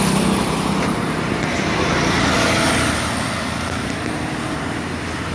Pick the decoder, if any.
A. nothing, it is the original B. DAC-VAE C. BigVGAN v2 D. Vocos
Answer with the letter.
A